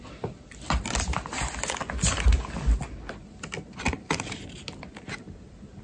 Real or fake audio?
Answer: real